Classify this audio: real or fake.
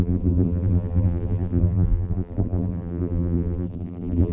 fake